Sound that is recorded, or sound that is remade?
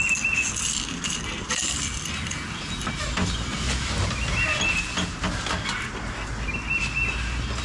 recorded